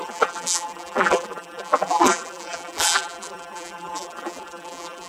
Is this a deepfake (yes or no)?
yes